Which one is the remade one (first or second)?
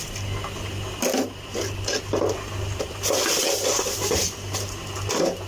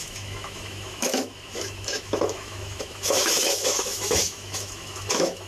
second